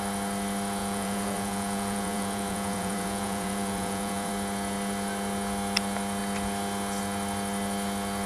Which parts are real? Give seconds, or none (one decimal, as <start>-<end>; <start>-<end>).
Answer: 0.0-0.8; 4.3-8.3

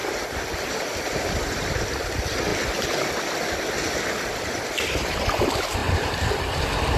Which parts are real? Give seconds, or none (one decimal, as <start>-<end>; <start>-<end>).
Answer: 0.0-0.7; 2.5-3.7

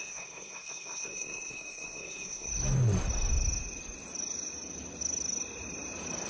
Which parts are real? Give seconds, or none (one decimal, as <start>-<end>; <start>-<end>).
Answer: 2.5-6.3

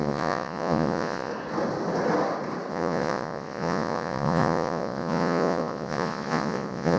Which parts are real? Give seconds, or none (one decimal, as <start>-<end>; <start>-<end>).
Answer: 1.3-2.7

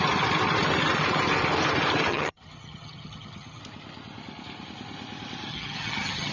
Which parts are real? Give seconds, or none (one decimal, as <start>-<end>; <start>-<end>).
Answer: 0.0-2.1; 3.6-5.5

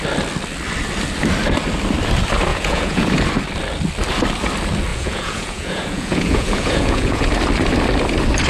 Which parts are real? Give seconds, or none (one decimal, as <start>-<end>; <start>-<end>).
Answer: 0.0-2.5; 3.2-4.9; 7.3-8.5

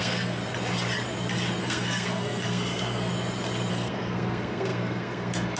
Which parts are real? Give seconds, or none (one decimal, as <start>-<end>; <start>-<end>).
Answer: 0.4-1.6; 3.1-3.7

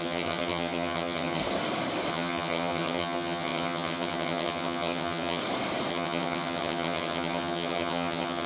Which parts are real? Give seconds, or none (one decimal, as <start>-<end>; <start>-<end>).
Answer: 1.4-2.1; 5.4-5.9